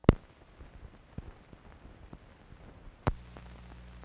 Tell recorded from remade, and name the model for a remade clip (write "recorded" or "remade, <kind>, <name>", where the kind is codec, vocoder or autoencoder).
recorded